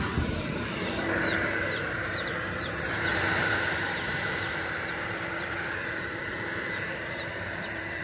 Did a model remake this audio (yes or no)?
yes